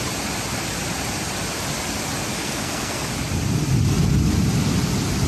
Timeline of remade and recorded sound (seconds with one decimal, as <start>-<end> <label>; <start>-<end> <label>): 0.0-2.3 recorded; 2.3-3.1 remade; 3.1-5.3 recorded